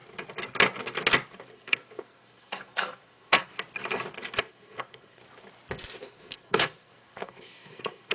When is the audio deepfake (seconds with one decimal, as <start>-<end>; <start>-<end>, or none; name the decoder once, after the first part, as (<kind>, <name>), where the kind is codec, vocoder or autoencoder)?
1.5-3.5 (codec, SNAC); 4.4-5.2; 6.0-8.1